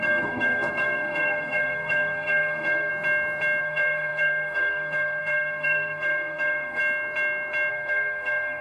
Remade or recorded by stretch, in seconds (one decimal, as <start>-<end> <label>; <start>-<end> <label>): 0.0-2.9 remade; 2.9-3.6 recorded; 3.6-6.8 remade; 6.8-7.7 recorded; 7.7-8.6 remade